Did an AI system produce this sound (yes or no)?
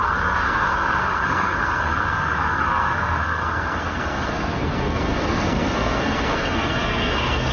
yes